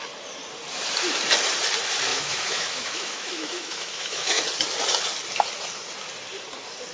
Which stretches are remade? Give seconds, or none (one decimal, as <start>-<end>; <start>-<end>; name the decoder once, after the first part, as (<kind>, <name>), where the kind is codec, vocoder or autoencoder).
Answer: 2.1-4.4 (autoencoder, DAC-VAE)